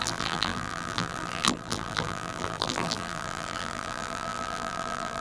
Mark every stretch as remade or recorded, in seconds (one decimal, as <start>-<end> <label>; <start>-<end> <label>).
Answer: 0.0-5.2 remade